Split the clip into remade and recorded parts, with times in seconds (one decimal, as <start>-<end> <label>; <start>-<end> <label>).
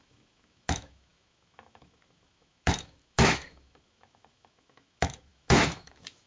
0.0-6.3 remade